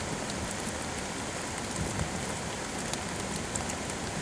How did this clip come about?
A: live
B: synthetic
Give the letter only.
A